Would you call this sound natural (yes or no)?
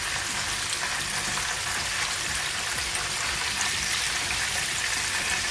yes